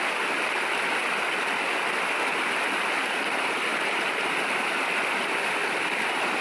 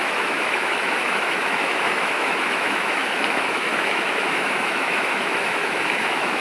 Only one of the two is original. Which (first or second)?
first